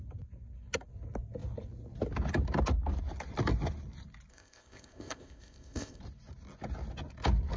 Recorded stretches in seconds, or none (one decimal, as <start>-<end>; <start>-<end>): 0.0-4.3; 6.0-7.6